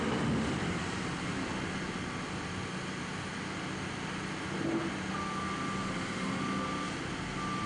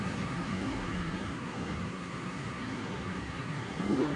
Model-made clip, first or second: second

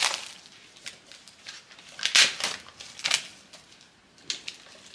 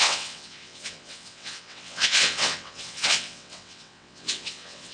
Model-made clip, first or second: second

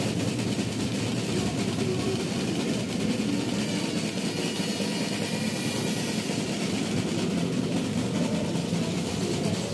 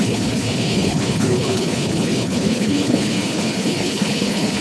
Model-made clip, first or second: second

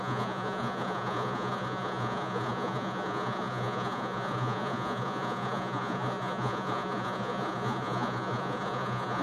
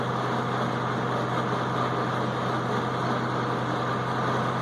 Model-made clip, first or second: first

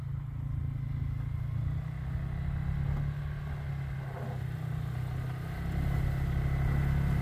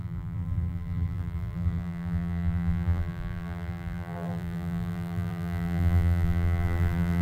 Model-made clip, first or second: second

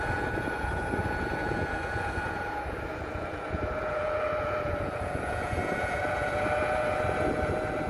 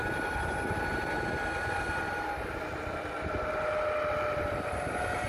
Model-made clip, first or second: first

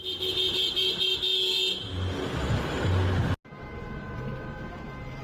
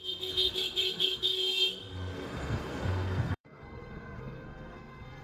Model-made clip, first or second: second